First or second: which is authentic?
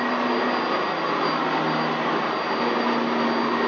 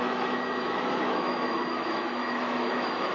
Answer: first